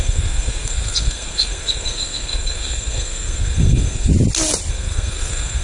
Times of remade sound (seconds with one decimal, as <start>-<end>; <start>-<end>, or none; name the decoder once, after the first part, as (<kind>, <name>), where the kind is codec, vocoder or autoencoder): 0.0-4.1 (codec, SNAC); 4.7-5.6